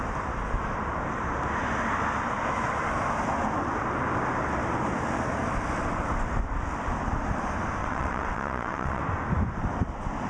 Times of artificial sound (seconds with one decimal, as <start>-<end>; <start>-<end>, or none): 7.8-9.0